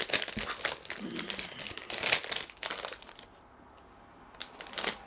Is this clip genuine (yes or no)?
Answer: yes